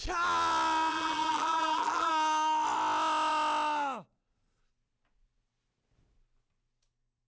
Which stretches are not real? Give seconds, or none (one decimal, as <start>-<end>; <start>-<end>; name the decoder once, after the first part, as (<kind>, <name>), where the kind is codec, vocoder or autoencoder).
0.9-2.1 (vocoder, BigVGAN v2)